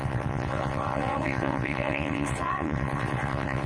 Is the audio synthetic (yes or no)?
yes